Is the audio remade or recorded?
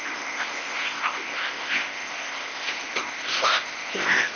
remade